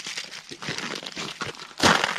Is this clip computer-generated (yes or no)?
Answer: no